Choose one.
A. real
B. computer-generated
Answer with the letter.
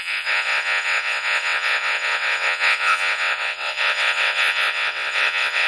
B